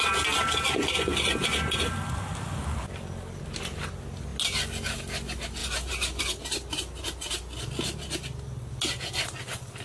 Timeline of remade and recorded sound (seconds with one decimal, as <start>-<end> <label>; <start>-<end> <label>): 0.0-9.8 recorded